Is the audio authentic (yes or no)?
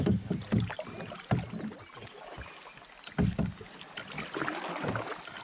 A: yes